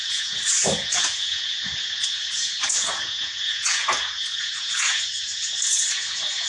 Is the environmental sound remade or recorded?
remade